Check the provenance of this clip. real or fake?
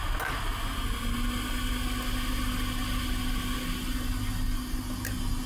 real